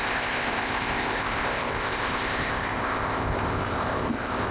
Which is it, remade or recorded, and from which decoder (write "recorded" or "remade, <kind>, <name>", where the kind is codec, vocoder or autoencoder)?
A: remade, codec, ZipCodec